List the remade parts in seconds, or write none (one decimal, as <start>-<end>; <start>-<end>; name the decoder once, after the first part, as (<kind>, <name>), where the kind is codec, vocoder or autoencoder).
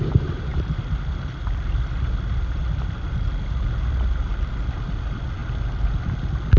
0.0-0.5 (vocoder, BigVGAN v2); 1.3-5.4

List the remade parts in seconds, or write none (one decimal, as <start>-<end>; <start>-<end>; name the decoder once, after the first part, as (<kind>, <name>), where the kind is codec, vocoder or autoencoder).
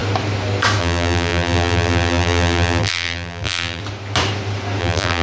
0.8-3.8 (vocoder, BigVGAN v2); 4.8-5.2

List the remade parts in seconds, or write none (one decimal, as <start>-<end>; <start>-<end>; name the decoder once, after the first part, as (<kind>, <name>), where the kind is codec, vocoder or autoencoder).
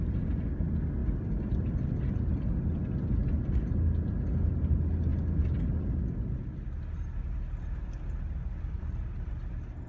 none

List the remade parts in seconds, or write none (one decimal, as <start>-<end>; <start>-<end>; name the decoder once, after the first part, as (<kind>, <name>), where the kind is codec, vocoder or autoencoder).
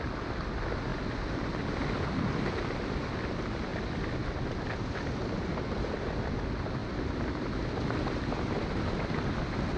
5.2-6.1 (vocoder, BigVGAN v2); 6.8-7.7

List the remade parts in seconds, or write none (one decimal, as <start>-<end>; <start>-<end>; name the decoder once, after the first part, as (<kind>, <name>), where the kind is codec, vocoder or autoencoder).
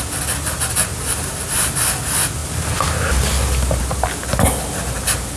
0.9-1.9 (vocoder, BigVGAN v2)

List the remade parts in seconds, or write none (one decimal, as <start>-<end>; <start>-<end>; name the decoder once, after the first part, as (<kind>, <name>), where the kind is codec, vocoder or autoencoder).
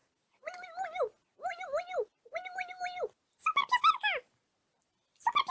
none